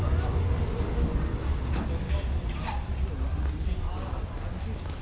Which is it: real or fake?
real